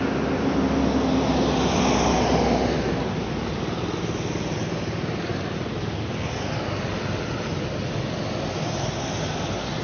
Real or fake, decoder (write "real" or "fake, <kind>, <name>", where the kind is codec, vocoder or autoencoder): real